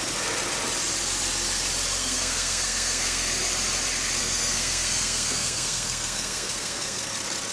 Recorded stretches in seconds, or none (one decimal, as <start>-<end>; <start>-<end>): 0.0-2.0; 3.3-4.2; 7.0-7.5